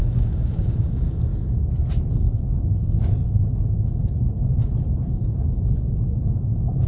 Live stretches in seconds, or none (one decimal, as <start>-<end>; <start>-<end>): 1.3-2.1; 2.7-5.2